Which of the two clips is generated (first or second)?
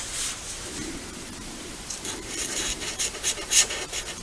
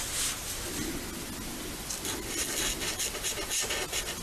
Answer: first